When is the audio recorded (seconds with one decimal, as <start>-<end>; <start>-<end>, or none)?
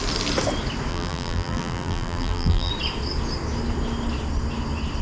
0.0-0.9; 2.7-5.0